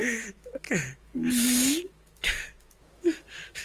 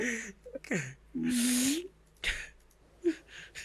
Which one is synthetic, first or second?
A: first